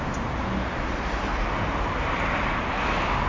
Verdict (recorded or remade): recorded